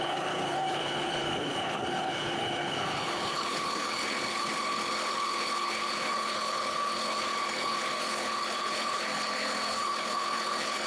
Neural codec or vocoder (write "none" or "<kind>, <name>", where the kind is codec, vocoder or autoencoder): codec, HILCodec